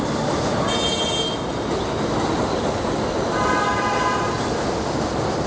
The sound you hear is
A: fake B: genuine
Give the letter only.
B